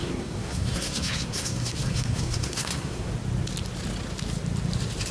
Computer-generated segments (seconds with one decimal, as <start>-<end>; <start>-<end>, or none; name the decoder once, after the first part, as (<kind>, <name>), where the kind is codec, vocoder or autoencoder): 0.0-3.1 (codec, SNAC)

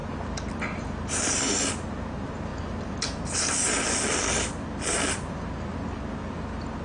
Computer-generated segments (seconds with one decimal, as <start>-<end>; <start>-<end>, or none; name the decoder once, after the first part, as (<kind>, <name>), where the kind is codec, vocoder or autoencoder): none